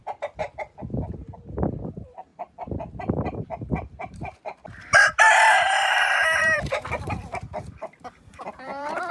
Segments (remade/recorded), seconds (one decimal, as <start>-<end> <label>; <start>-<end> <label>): 0.0-9.1 remade